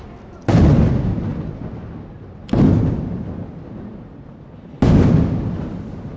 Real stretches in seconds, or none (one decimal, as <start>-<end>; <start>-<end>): 0.0-6.2